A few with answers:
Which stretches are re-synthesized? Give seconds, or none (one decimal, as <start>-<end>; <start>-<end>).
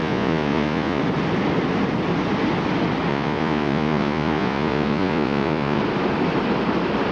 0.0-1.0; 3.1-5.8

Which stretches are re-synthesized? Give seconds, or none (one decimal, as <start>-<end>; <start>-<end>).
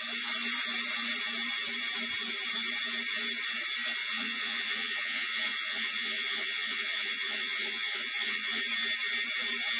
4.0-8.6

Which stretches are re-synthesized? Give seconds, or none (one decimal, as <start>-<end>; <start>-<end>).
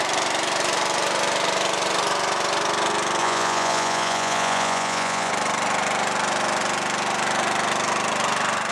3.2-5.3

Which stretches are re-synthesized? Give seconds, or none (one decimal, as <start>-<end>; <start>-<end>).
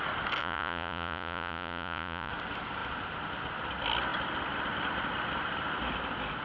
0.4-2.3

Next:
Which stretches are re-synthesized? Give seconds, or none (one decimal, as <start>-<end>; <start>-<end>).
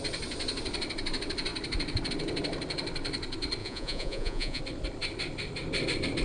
3.6-4.6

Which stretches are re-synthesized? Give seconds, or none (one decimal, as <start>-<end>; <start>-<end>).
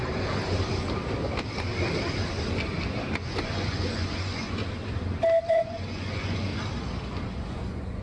3.3-4.6; 5.5-6.5; 7.3-8.0